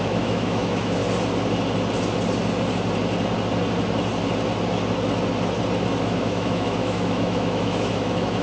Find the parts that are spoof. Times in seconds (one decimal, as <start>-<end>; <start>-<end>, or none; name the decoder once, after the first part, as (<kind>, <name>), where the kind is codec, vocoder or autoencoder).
0.0-1.0 (autoencoder, DAC-VAE); 6.0-8.4